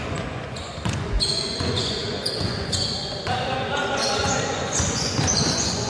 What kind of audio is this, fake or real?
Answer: fake